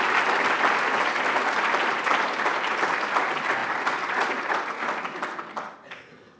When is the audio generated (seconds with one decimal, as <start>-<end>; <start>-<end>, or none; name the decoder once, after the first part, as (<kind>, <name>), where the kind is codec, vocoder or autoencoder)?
none